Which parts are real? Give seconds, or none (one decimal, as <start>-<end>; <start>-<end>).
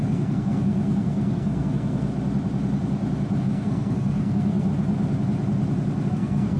2.1-3.4; 4.7-6.1